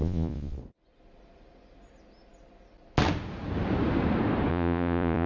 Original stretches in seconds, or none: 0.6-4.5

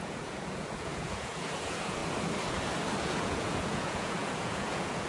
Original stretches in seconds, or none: 2.0-3.0

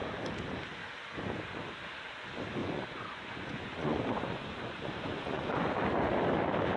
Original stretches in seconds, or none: 0.0-2.6; 5.7-6.8

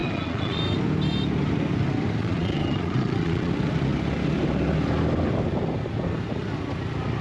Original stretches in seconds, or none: 0.6-2.2; 3.5-7.2

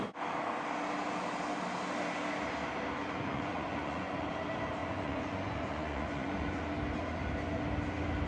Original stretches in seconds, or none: 0.0-3.0; 4.3-4.8; 6.6-8.3

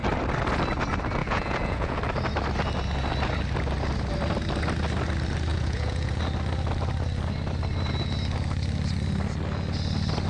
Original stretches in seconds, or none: 0.0-1.2; 2.0-5.5; 6.2-10.3